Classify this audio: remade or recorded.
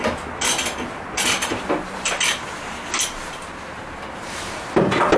recorded